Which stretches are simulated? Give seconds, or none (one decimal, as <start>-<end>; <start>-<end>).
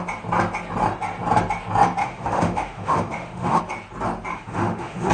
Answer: 2.0-3.6; 4.3-5.1